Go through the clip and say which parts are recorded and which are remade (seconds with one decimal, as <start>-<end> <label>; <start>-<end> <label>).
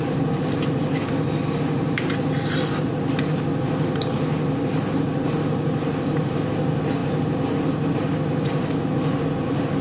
0.0-9.8 recorded